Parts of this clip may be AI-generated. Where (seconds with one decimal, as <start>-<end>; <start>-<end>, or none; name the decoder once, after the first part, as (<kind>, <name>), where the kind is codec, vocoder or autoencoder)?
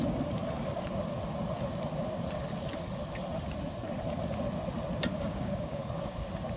5.1-6.1 (codec, DAC)